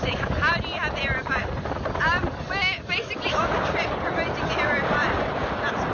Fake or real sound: real